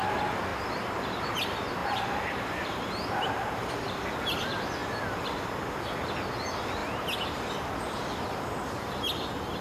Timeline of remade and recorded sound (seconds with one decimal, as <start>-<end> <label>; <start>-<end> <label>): 0.0-1.8 recorded; 1.8-3.7 remade; 3.7-9.6 recorded